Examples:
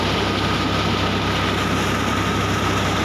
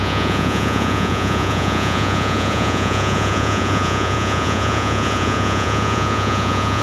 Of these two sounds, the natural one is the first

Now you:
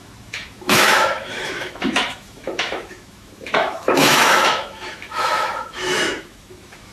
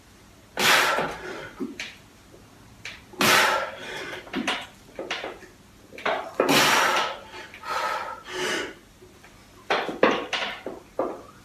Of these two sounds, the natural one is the second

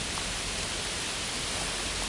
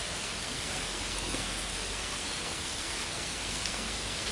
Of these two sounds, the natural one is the first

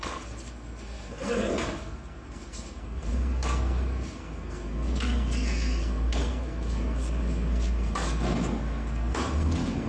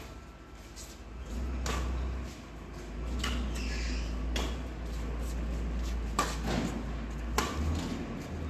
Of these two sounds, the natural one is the second